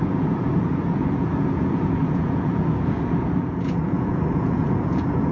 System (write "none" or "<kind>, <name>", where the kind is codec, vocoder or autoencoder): vocoder, Vocos